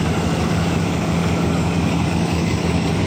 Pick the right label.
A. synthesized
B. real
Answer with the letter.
A